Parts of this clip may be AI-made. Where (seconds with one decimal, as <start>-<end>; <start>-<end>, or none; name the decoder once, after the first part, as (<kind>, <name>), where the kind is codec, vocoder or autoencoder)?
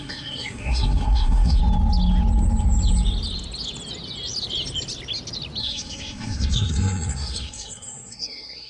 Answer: 0.0-1.6 (codec, SNAC); 5.6-8.7